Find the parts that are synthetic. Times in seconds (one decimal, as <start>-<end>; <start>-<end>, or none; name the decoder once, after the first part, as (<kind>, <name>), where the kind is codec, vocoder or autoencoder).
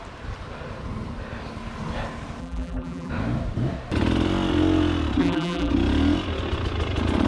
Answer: 2.4-3.1 (vocoder, BigVGAN v2); 5.2-5.7